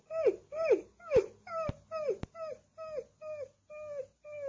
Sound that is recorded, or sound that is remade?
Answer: recorded